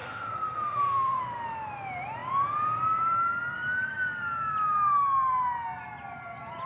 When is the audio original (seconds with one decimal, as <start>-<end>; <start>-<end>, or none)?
1.2-6.7